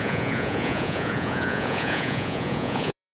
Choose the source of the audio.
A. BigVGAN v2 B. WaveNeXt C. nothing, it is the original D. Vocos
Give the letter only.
D